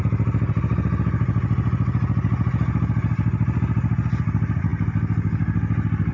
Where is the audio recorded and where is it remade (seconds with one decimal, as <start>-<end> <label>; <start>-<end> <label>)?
0.0-6.1 recorded